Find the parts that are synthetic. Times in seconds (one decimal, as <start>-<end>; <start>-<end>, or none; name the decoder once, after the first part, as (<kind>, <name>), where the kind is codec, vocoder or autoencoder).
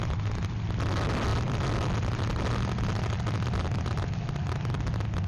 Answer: none